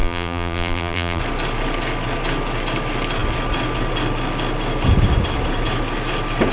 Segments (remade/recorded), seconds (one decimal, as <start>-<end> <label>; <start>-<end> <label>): 0.0-1.2 remade; 1.2-6.5 recorded